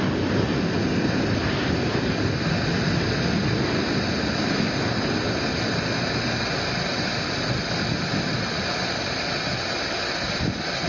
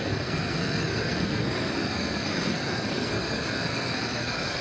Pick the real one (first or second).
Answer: first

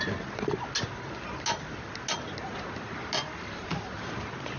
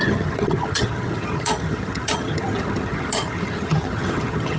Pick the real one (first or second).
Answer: first